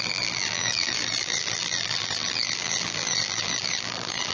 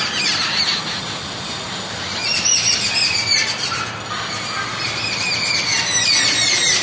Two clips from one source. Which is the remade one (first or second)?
first